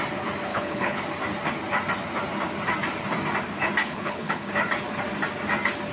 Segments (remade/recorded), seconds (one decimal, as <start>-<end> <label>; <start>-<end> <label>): 0.0-0.5 recorded; 0.5-1.0 remade; 1.0-3.8 recorded; 3.8-4.5 remade; 4.5-5.9 recorded